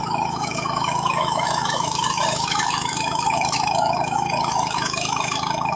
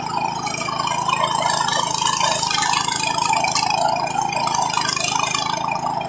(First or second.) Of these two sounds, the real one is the second